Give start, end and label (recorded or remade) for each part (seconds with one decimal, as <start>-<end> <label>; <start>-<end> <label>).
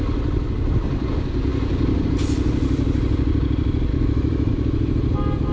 0.0-3.9 recorded; 3.9-4.5 remade; 4.5-5.5 recorded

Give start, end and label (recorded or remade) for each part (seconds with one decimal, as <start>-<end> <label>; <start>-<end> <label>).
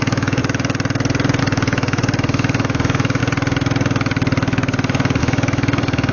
0.0-0.4 remade; 0.4-1.4 recorded; 1.4-3.2 remade; 3.2-5.2 recorded; 5.2-6.1 remade